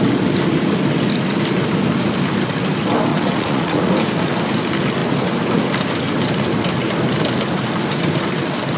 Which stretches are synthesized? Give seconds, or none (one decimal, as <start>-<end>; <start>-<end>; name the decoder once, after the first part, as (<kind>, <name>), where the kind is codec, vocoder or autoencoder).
3.1-3.9 (vocoder, Vocos)